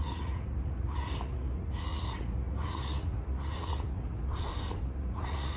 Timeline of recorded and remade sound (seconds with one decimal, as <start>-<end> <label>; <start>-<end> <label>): 0.0-4.3 remade; 4.3-4.8 recorded; 4.8-5.6 remade